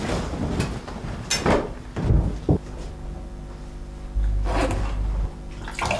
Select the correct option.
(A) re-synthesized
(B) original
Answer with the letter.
B